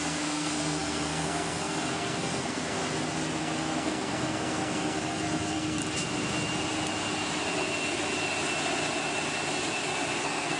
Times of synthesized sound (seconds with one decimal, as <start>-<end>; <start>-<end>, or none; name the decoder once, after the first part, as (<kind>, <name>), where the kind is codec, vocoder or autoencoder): 0.0-2.8 (codec, SNAC); 3.4-5.8; 10.2-10.6